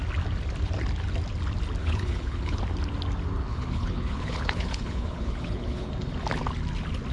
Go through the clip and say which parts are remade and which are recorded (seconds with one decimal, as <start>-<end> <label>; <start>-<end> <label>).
0.0-1.8 recorded; 1.8-2.6 remade; 2.6-3.5 recorded; 3.5-5.9 remade; 5.9-7.1 recorded